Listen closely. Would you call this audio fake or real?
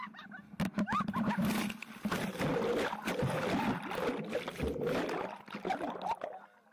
real